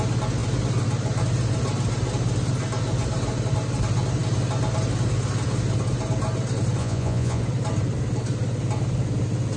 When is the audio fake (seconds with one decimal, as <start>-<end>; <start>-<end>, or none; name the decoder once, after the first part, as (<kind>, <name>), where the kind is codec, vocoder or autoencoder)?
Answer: 6.8-7.4 (vocoder, Vocos)